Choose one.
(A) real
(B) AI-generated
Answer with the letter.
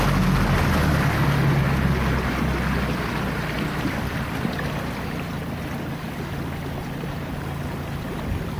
A